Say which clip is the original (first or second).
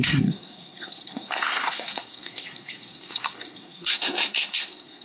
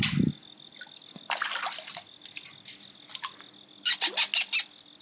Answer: second